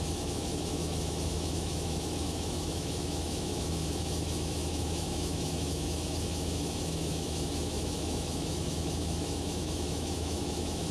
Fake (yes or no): yes